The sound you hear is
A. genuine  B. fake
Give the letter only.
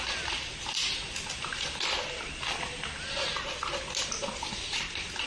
A